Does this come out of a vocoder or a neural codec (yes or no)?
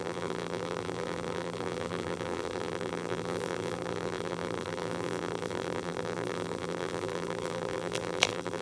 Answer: yes